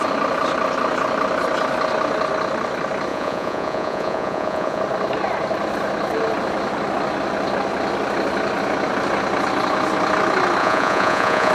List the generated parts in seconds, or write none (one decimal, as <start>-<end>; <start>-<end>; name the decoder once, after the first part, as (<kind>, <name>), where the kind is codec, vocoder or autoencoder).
3.1-4.8 (vocoder, Vocos); 10.6-11.5